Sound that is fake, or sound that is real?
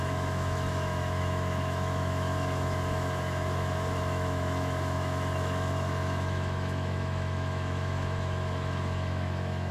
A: fake